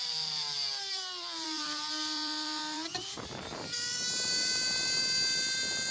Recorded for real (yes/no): no